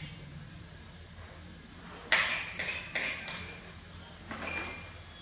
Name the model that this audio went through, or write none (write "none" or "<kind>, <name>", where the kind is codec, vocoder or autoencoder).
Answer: none